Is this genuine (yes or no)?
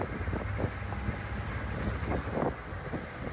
yes